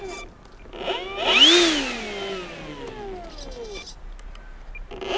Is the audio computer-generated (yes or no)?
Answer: no